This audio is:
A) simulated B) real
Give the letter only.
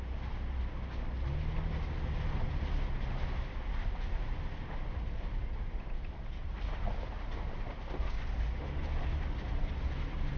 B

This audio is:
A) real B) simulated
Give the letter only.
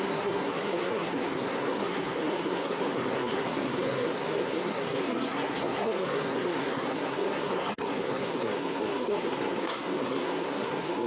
B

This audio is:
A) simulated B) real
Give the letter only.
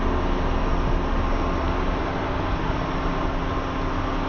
B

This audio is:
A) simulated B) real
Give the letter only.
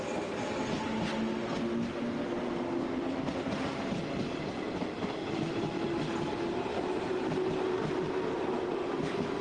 B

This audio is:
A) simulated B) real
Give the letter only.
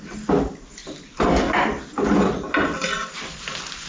B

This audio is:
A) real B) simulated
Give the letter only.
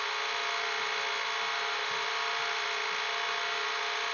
A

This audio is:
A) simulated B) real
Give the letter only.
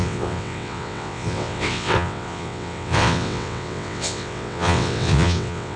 A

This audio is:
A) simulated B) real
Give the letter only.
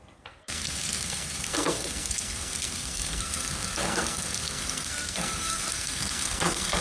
A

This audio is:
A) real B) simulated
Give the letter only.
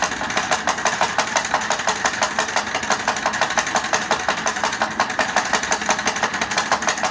B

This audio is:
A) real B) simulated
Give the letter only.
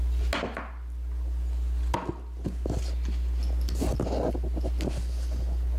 A